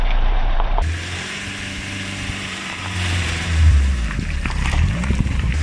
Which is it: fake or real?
fake